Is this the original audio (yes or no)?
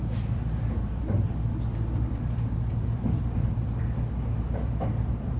no